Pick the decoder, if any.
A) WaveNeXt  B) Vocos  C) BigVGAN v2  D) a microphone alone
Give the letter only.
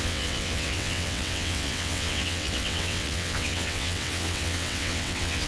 A